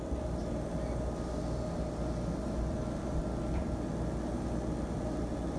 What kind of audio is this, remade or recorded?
recorded